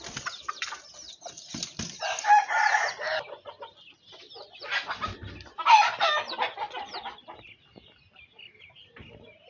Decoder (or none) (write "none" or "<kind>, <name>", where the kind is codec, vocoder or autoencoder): none